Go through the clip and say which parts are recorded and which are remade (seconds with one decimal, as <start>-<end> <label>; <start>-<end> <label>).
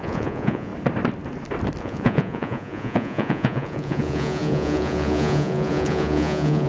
0.0-0.7 remade; 0.7-1.8 recorded; 1.8-6.7 remade